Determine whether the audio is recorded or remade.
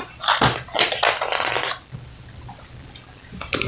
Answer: recorded